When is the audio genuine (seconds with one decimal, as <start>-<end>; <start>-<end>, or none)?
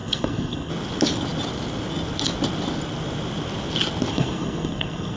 0.7-4.1